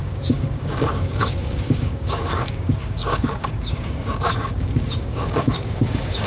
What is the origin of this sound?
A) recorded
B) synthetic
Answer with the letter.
B